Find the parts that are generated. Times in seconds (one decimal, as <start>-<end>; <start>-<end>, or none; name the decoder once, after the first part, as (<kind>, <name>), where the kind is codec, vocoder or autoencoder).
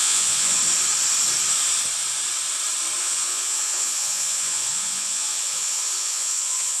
0.0-0.6 (vocoder, Vocos); 3.0-6.8